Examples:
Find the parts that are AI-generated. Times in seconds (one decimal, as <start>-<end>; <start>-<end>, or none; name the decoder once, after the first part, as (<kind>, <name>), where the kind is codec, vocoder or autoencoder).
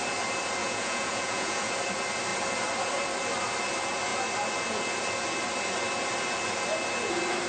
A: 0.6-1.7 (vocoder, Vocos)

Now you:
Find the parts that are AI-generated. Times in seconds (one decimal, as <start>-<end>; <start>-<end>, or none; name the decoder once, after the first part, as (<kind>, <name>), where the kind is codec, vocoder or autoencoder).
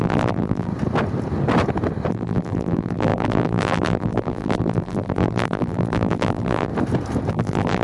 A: 0.0-0.7 (vocoder, BigVGAN v2); 2.1-6.7; 7.3-7.8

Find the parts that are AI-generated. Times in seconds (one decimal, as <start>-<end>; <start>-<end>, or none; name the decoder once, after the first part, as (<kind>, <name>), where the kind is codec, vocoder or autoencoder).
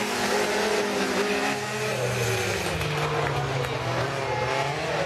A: none